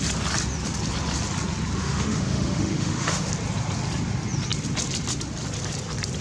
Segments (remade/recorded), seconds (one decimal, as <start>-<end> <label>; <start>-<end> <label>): 0.0-1.8 recorded; 1.8-3.3 remade; 3.3-6.2 recorded